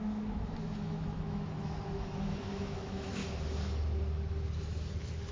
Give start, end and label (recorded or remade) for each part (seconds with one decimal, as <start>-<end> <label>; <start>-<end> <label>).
0.0-3.2 remade; 3.2-5.3 recorded